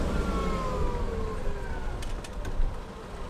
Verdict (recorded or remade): recorded